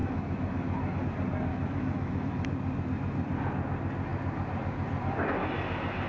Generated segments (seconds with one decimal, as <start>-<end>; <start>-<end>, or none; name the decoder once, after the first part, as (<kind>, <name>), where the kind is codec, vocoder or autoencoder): 0.0-1.0 (autoencoder, DAC-VAE); 1.5-2.3